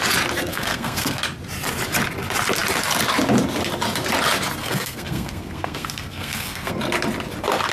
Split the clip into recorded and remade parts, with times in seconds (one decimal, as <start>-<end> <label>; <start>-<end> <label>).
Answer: 0.0-0.5 recorded; 0.5-1.2 remade; 1.2-4.6 recorded; 4.6-6.8 remade; 6.8-7.7 recorded